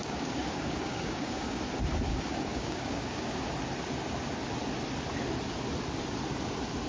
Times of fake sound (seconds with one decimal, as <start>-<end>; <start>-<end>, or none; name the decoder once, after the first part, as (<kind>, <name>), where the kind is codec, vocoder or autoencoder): 0.0-1.6 (codec, DAC); 2.1-3.5